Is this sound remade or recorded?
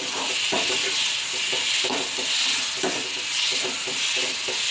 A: recorded